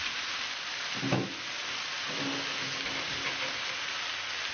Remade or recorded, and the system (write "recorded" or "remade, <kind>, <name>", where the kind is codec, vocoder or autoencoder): recorded